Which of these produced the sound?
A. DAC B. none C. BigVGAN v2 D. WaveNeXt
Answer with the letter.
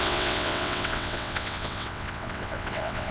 D